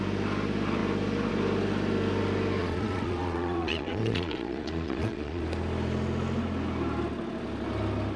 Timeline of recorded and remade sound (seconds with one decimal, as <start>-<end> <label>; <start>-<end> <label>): 0.0-2.6 recorded; 2.6-5.4 remade; 5.4-8.2 recorded